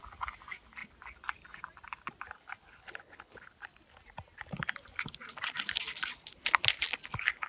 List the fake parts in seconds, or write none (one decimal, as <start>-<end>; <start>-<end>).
2.6-3.5